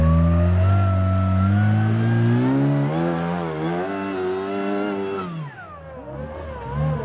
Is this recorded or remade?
recorded